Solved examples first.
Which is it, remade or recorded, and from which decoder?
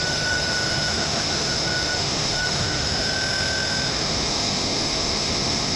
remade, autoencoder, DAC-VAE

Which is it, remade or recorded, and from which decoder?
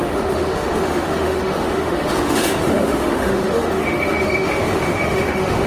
remade, autoencoder, DAC-VAE